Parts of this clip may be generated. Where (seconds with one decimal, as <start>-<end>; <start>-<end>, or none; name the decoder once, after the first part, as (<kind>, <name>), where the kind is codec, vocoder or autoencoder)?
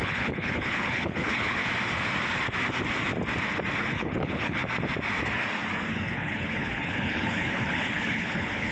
0.0-1.6 (codec, HILCodec); 3.8-4.6; 5.9-8.7